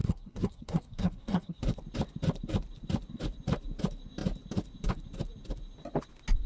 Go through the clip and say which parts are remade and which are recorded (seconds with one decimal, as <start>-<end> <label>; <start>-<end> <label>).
0.0-1.6 remade; 1.6-6.5 recorded

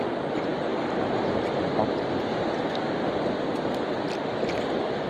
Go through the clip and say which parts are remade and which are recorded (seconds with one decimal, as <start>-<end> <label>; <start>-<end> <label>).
0.0-5.1 recorded

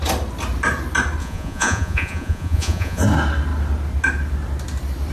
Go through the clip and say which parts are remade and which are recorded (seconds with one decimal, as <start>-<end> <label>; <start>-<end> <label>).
0.0-1.2 recorded; 1.2-3.0 remade; 3.0-5.1 recorded

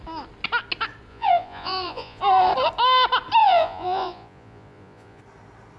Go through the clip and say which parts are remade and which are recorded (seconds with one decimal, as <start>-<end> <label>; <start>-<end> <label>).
0.0-1.1 recorded; 1.1-2.2 remade; 2.2-3.4 recorded; 3.4-5.2 remade; 5.2-5.8 recorded

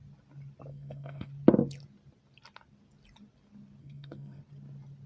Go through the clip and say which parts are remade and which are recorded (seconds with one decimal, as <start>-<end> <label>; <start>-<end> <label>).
0.0-0.7 recorded; 0.7-1.3 remade; 1.3-3.8 recorded; 3.8-4.4 remade; 4.4-5.1 recorded

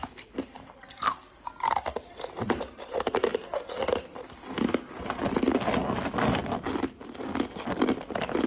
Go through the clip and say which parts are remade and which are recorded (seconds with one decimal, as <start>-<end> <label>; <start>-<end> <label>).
0.0-8.5 recorded

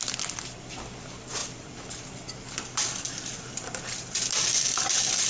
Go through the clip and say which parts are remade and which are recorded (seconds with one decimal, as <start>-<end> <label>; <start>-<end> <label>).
0.0-1.4 recorded; 1.4-3.8 remade; 3.8-4.5 recorded; 4.5-5.3 remade

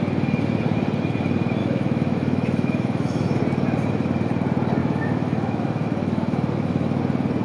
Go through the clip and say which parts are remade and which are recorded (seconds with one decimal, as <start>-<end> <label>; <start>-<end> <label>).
0.0-1.6 recorded; 1.6-3.4 remade; 3.4-4.8 recorded; 4.8-7.0 remade; 7.0-7.4 recorded